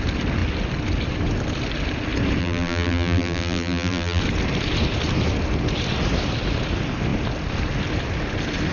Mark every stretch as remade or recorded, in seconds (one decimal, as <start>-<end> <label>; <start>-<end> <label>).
0.0-2.4 recorded; 2.4-4.2 remade; 4.2-8.7 recorded